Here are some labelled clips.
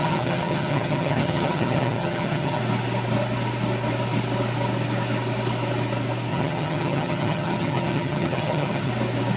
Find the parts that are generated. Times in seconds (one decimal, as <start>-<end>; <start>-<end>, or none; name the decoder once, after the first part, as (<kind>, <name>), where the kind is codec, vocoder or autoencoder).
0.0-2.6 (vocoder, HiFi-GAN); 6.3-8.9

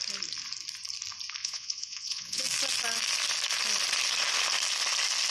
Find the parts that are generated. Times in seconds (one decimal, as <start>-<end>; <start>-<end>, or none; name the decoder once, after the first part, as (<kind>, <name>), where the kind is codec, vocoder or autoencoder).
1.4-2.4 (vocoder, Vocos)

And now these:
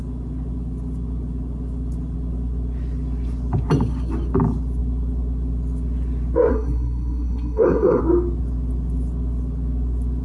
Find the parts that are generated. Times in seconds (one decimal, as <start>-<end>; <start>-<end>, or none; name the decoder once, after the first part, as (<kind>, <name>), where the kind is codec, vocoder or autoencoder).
6.5-8.0 (codec, SNAC)

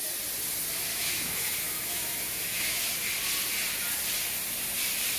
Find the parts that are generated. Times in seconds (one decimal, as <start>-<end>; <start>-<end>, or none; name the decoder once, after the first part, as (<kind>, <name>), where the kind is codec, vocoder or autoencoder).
0.9-2.8 (autoencoder, DAC-VAE)